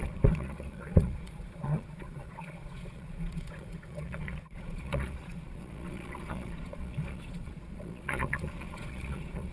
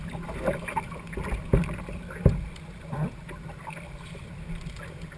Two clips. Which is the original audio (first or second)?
second